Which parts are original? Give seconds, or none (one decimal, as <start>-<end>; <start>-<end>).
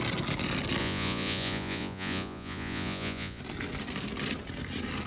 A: 0.0-0.8; 3.4-5.1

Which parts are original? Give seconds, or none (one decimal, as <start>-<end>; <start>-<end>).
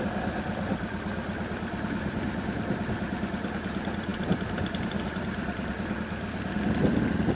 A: 0.0-7.4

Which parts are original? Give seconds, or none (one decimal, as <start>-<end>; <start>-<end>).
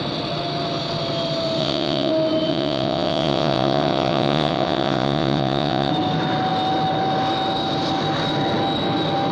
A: 0.0-1.6; 2.1-2.5; 5.9-9.3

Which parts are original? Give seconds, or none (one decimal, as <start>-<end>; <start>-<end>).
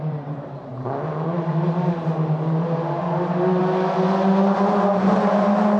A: 3.6-5.1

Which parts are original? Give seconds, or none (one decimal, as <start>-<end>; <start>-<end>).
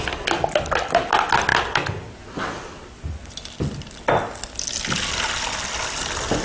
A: 0.0-6.4